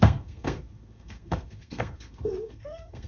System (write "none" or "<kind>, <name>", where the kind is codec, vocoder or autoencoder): codec, SNAC